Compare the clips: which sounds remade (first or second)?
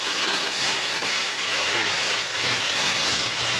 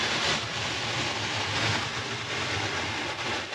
first